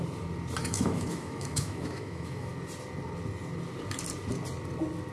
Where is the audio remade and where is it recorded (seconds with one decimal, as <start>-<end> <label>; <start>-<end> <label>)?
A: 0.0-0.6 recorded; 0.6-2.5 remade; 2.5-5.1 recorded